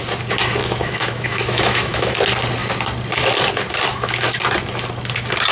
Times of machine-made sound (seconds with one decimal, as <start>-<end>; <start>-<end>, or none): 0.6-2.2; 3.9-4.4